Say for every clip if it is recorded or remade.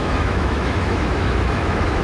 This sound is remade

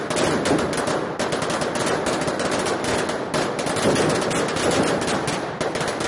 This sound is recorded